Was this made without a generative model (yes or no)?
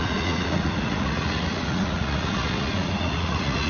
no